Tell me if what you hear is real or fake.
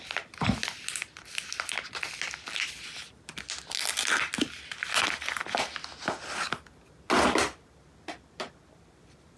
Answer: real